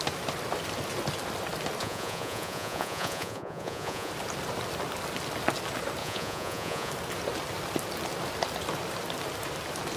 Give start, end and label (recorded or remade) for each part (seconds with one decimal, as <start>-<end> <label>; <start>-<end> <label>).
0.0-1.8 recorded; 1.8-4.1 remade; 4.1-6.0 recorded; 6.0-6.9 remade; 6.9-10.0 recorded